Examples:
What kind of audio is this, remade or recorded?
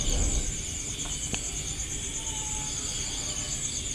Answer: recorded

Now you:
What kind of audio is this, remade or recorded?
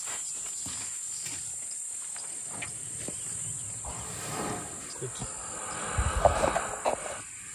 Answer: recorded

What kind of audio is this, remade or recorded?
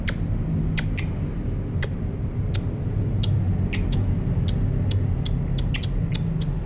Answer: recorded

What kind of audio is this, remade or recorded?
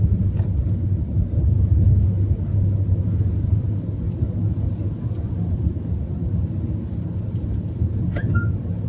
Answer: recorded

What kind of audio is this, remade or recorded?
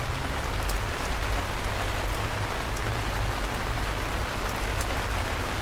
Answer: recorded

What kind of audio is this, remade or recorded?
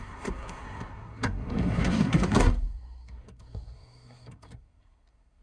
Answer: remade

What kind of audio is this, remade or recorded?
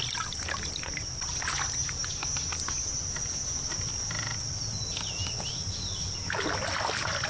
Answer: recorded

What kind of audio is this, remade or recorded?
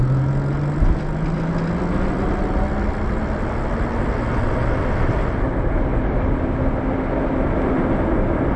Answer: recorded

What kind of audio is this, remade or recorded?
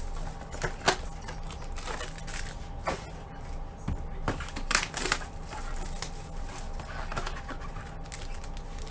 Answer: recorded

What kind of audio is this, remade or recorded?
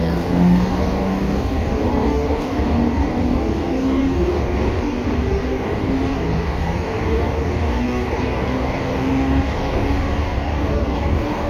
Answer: remade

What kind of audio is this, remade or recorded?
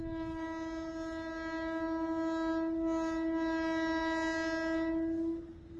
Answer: recorded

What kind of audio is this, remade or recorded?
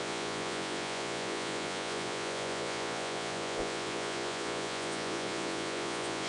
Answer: remade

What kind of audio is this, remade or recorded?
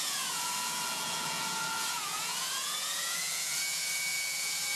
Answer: remade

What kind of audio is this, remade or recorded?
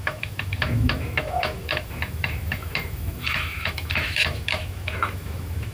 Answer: remade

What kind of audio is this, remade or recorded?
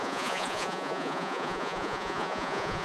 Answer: remade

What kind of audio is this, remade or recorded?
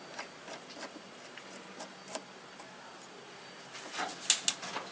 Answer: recorded